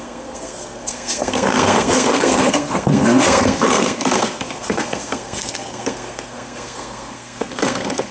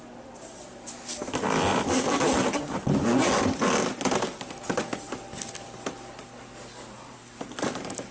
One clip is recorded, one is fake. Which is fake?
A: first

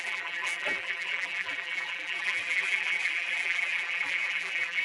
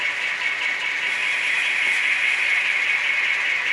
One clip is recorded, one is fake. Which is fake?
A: first